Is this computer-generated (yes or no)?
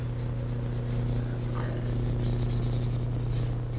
no